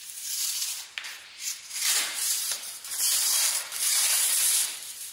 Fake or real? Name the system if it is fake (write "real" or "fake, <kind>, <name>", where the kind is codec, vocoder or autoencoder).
fake, vocoder, BigVGAN v2